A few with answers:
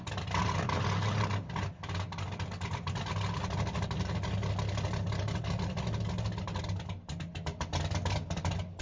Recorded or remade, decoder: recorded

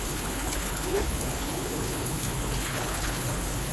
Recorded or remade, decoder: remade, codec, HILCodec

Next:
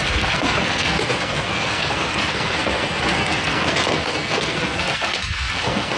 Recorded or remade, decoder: remade, codec, SNAC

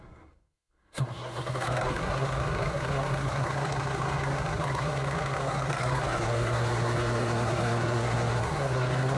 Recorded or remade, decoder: remade, codec, SNAC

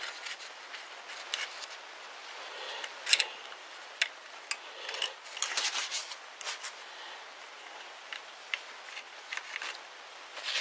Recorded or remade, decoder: recorded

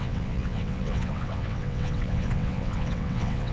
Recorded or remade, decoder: remade, vocoder, WaveNeXt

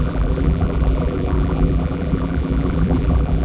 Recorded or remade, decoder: remade, vocoder, BigVGAN v2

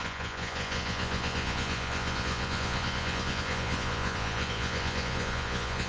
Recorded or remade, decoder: remade, vocoder, Vocos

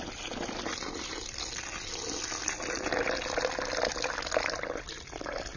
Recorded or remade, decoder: recorded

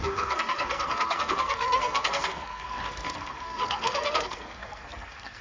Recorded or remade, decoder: remade, codec, SNAC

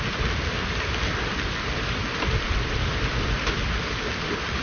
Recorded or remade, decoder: recorded